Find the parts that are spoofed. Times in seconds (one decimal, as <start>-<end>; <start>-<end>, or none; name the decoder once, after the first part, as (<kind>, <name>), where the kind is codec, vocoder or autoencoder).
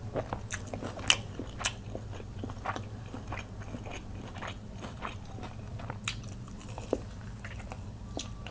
none